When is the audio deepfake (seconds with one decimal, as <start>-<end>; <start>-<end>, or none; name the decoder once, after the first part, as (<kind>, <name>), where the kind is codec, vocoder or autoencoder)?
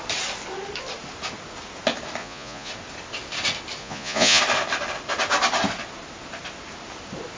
2.2-2.7 (vocoder, Vocos); 3.8-4.4